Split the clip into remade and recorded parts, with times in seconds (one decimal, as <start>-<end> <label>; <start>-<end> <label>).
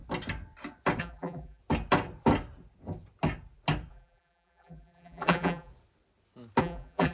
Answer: 0.0-1.0 recorded; 1.0-1.6 remade; 1.6-3.9 recorded; 3.9-5.7 remade; 5.7-6.6 recorded; 6.6-7.1 remade